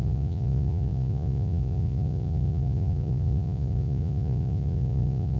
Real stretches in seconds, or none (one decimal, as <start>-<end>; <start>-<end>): none